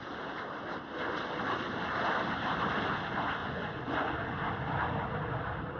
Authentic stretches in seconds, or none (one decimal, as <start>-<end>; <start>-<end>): 0.0-3.4; 4.1-5.8